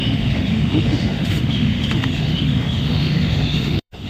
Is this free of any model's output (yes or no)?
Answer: no